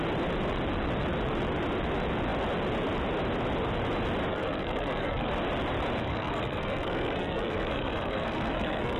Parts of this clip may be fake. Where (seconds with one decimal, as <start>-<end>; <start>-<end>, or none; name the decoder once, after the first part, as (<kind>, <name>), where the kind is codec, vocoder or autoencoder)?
4.3-5.3 (codec, SNAC); 6.0-9.0